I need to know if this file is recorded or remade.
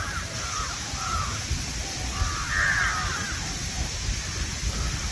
recorded